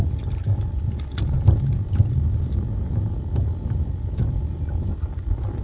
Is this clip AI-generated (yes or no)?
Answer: no